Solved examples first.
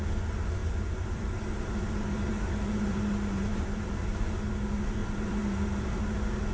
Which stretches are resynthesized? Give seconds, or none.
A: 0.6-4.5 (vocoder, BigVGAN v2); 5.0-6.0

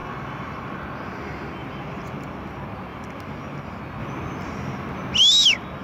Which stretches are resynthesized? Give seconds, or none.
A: 0.0-0.8 (vocoder, BigVGAN v2); 1.6-2.5; 2.9-3.6